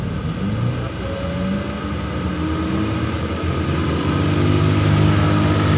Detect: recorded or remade recorded